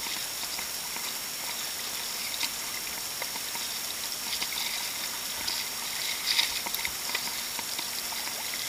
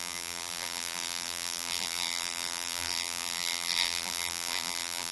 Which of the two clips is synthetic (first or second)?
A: second